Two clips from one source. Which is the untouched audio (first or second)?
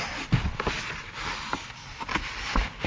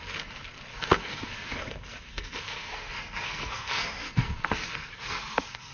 first